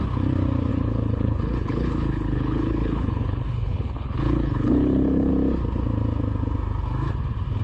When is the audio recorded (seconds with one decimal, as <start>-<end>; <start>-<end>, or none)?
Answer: 0.0-0.7; 5.3-7.6

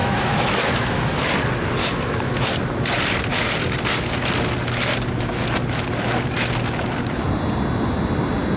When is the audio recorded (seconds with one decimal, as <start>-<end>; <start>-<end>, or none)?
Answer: 1.2-1.8; 2.5-8.6

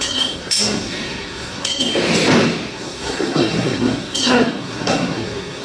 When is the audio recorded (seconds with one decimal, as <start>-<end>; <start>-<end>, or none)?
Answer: 1.9-2.7

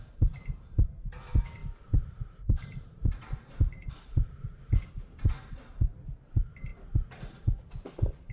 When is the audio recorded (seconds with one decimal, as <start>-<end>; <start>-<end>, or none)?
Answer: 0.0-1.6; 4.9-8.3

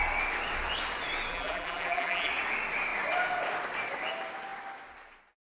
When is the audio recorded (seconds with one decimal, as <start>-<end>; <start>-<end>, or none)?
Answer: 0.0-1.3; 2.3-5.6

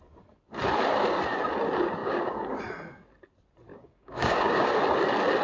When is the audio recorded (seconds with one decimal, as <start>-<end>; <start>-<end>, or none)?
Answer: 0.0-2.0; 2.6-3.7; 4.7-5.4

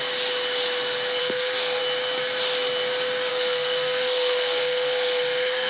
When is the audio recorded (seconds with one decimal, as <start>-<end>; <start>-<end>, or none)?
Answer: 0.0-1.2; 1.8-3.3

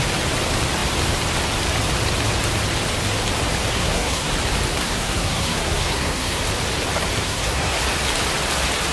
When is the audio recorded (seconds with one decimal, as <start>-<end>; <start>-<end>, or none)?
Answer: 0.0-3.7; 4.3-4.7; 6.4-7.2; 7.8-8.9